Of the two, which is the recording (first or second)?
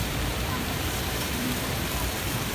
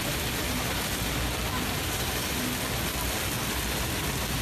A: second